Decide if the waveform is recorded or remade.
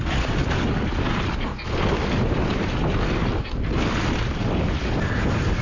recorded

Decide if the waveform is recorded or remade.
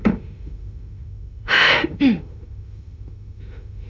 remade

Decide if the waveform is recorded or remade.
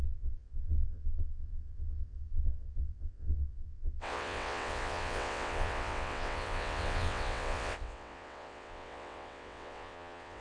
remade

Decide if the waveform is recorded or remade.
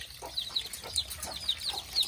recorded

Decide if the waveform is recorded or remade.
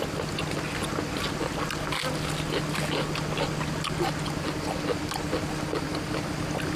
recorded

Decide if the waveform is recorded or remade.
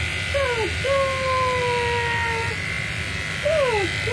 recorded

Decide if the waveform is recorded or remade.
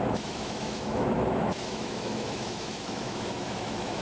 remade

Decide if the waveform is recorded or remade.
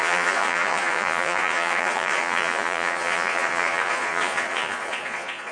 remade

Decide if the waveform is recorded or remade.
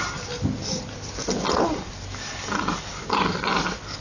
recorded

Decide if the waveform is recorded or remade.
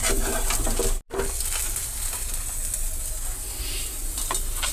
recorded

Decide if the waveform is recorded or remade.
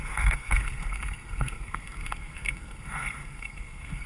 remade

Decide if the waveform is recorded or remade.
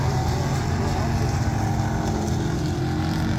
recorded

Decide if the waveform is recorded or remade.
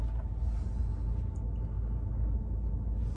recorded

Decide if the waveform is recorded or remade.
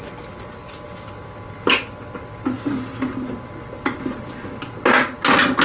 recorded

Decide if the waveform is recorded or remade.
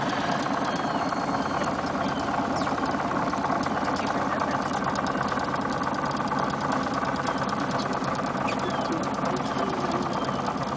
recorded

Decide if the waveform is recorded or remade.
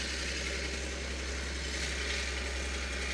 recorded